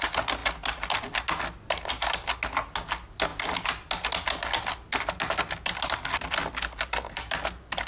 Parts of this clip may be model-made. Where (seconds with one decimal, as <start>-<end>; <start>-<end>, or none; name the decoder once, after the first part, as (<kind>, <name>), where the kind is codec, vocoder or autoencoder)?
none